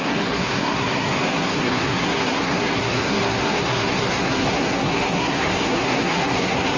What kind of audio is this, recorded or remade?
remade